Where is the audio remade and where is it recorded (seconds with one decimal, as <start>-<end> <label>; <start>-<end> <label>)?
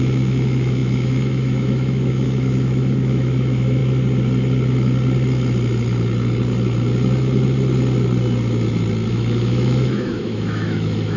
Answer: 0.0-3.8 remade; 3.8-9.1 recorded; 9.1-11.2 remade